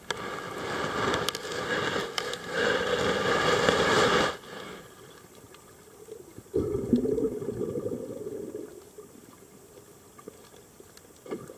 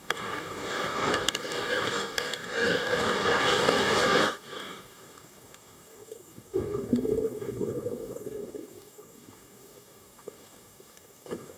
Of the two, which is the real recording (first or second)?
first